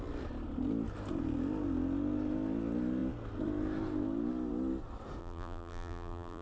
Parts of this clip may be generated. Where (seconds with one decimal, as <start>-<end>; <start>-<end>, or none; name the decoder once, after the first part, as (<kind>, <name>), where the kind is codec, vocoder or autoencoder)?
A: 5.2-6.4 (vocoder, BigVGAN v2)